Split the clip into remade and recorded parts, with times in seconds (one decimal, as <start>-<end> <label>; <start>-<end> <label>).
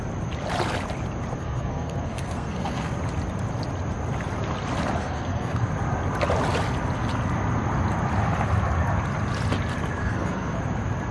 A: 0.0-1.4 recorded; 1.4-2.9 remade; 2.9-5.0 recorded; 5.0-5.7 remade; 5.7-10.0 recorded; 10.0-10.6 remade; 10.6-11.1 recorded